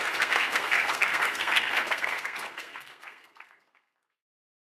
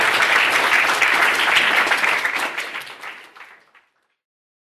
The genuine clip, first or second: second